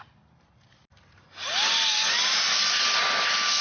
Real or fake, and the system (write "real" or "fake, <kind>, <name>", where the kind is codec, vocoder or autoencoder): real